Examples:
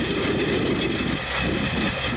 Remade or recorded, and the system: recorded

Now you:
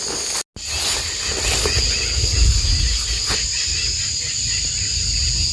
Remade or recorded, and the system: recorded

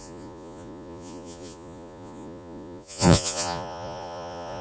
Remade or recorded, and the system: remade, vocoder, Vocos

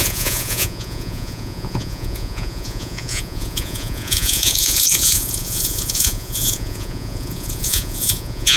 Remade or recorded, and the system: remade, vocoder, Vocos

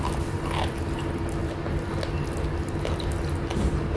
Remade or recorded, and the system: recorded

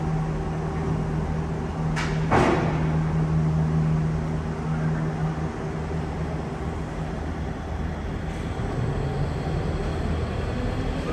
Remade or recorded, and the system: recorded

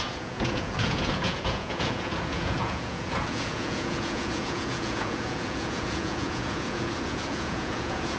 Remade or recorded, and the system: remade, vocoder, Vocos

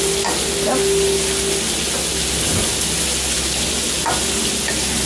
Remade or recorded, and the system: recorded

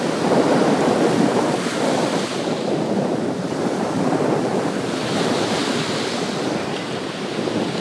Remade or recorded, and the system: recorded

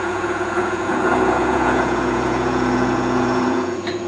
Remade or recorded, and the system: remade, vocoder, Vocos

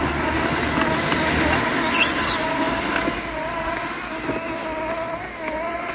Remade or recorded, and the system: recorded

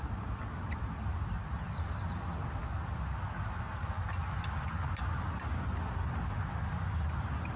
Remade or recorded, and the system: recorded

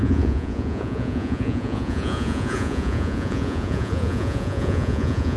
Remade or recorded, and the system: remade, vocoder, Vocos